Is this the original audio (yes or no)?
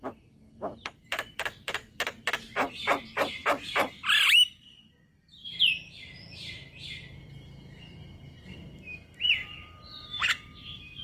no